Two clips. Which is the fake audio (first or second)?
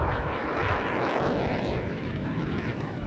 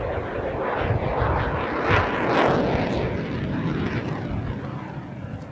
first